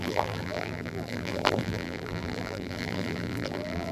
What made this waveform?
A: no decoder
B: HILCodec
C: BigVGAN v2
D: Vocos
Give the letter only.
C